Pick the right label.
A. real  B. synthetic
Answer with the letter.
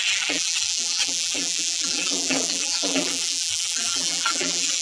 B